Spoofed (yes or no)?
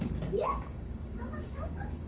yes